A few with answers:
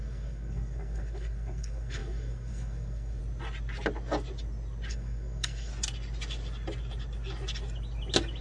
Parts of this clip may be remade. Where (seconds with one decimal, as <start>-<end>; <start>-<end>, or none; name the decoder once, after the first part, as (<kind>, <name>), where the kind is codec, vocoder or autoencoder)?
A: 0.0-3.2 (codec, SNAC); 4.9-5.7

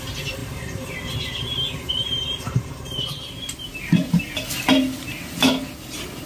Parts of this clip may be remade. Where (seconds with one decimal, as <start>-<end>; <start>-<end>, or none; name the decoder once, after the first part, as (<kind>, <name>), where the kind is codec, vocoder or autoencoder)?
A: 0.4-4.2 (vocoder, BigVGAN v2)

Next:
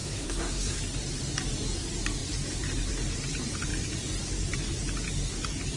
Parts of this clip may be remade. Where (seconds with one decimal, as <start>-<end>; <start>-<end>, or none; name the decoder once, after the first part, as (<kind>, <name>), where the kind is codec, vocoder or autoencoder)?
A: 0.0-0.8 (codec, SNAC)

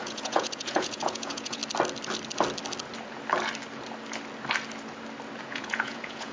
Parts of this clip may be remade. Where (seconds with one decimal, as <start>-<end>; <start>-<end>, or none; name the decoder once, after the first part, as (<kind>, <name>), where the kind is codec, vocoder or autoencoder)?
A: 0.0-1.6 (vocoder, Vocos); 5.4-6.3